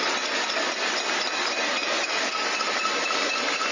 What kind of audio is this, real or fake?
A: real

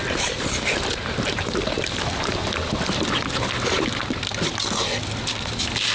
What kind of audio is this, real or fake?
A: real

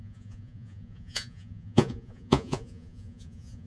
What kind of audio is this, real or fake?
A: fake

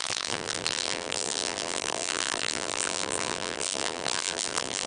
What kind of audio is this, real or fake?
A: fake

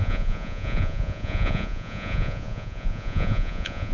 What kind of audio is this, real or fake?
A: fake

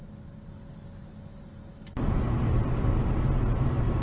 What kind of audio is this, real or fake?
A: real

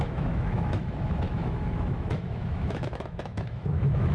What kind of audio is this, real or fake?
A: fake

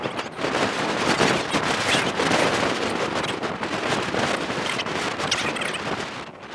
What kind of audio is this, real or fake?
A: real